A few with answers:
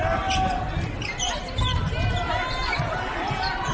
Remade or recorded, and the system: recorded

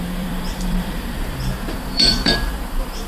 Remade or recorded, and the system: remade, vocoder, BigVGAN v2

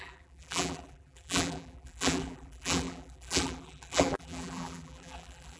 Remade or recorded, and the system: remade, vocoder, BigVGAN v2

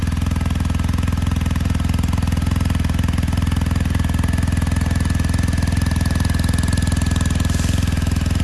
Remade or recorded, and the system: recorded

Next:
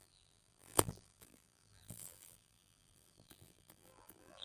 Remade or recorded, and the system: remade, vocoder, BigVGAN v2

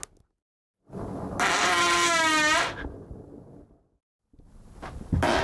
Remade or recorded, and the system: recorded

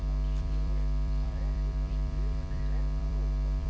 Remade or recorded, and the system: remade, vocoder, BigVGAN v2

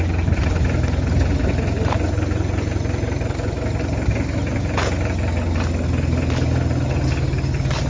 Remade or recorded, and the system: recorded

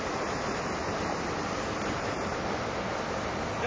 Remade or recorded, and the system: recorded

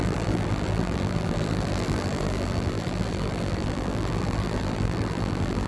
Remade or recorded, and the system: remade, vocoder, BigVGAN v2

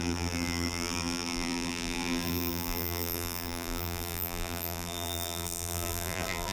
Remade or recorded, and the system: remade, vocoder, BigVGAN v2